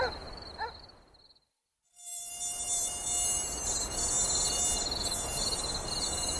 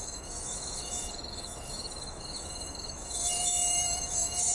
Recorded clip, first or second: first